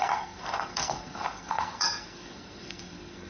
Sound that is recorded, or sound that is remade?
remade